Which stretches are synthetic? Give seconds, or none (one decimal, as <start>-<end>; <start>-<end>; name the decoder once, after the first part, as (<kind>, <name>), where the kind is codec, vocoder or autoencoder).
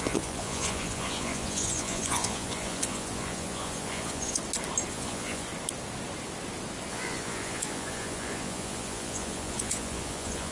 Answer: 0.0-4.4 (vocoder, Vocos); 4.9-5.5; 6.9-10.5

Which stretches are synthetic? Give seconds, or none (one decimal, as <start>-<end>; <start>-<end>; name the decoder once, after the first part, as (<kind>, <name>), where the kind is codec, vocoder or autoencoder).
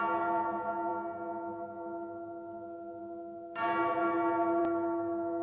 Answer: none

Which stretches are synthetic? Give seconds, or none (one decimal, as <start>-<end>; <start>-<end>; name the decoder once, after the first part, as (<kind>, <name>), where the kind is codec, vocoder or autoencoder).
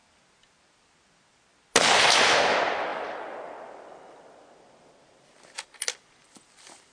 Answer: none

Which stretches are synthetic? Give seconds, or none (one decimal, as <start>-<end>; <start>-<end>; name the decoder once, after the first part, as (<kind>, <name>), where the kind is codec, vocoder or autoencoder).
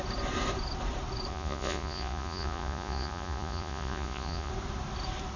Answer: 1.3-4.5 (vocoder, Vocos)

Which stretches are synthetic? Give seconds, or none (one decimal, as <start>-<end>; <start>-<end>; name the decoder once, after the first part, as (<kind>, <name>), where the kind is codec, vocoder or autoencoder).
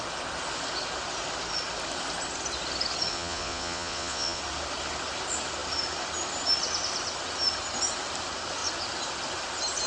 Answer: 3.1-4.4 (vocoder, Vocos)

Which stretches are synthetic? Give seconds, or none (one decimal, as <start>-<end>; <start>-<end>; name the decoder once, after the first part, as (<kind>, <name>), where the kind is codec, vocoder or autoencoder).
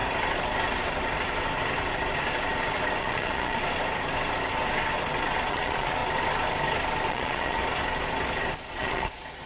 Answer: 3.0-3.6 (vocoder, Vocos); 5.5-6.0; 7.1-7.6; 8.6-9.5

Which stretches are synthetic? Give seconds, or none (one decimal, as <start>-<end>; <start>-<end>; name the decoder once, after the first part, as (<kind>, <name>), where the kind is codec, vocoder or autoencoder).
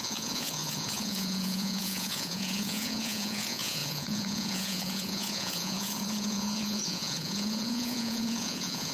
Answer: 0.0-8.9 (vocoder, Vocos)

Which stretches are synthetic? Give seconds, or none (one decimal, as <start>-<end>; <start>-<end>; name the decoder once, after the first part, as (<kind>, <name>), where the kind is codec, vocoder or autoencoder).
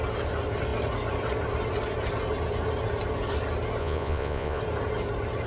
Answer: 3.8-4.6 (vocoder, Vocos)